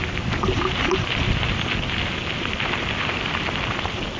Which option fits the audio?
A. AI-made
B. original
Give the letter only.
B